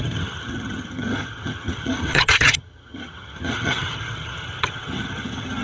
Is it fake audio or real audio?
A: fake